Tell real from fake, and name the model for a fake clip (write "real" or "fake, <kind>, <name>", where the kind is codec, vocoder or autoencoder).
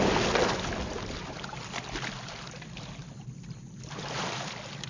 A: real